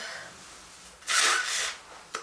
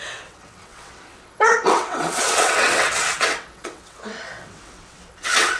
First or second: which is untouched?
first